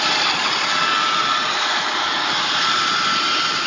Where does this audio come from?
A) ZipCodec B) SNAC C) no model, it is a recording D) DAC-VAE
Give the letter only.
C